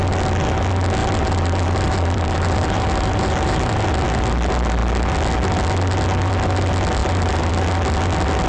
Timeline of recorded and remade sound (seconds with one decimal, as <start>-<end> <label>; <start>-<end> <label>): 0.0-1.0 recorded; 1.0-3.7 remade; 3.7-7.0 recorded; 7.0-7.5 remade; 7.5-8.5 recorded